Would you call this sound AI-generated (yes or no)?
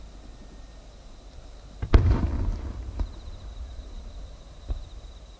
no